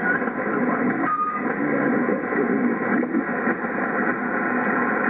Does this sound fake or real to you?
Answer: real